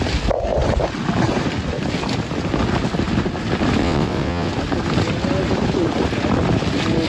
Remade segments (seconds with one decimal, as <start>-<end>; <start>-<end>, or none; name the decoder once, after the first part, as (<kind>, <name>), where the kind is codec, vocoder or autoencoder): 3.8-4.5 (vocoder, WaveNeXt)